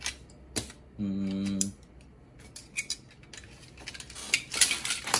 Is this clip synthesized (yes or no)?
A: no